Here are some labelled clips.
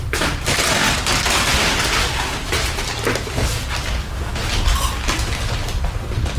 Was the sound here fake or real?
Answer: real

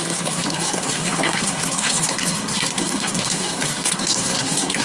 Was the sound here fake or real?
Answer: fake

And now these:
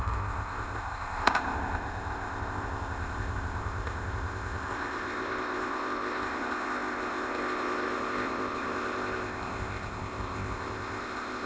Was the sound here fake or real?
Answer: fake